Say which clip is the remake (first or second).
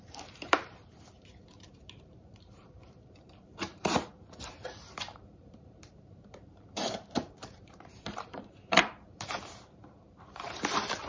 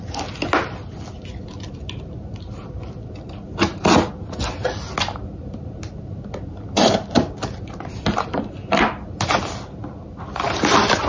first